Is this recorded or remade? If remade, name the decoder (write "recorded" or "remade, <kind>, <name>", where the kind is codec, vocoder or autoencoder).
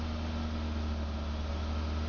recorded